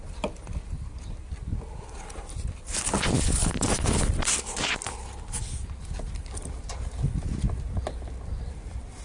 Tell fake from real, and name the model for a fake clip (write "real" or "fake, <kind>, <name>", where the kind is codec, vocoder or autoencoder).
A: real